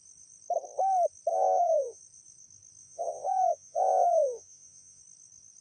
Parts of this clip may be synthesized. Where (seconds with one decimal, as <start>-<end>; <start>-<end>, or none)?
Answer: 1.3-2.0; 2.8-5.0